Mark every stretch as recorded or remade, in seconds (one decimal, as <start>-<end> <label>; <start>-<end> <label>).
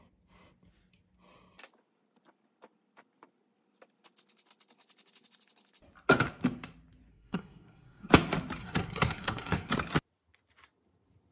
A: 0.0-7.1 recorded; 7.1-8.1 remade; 8.1-8.6 recorded; 8.6-9.7 remade; 9.7-11.3 recorded